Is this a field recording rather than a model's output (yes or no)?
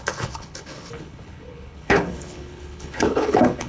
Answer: no